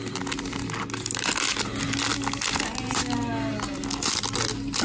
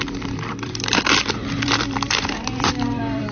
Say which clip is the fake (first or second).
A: second